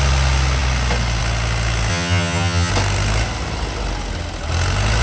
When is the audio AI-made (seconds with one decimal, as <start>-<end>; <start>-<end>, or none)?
1.9-2.7